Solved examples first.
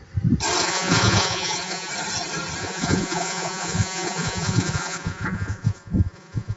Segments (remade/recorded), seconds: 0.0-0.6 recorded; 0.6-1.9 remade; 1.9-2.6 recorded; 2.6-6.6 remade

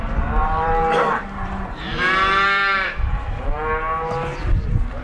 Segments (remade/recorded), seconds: 0.0-0.4 recorded; 0.4-3.4 remade; 3.4-5.0 recorded

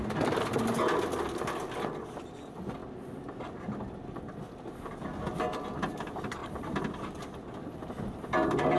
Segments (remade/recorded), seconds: 0.0-8.8 recorded

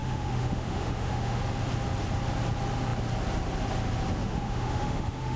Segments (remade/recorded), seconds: 0.0-1.4 remade; 1.4-4.2 recorded; 4.2-5.4 remade

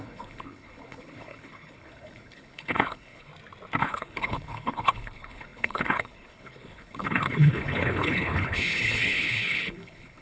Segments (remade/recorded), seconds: 0.0-3.3 remade; 3.3-3.8 recorded; 3.8-10.2 remade